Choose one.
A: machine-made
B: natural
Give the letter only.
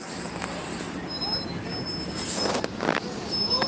B